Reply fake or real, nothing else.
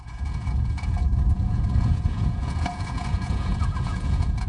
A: fake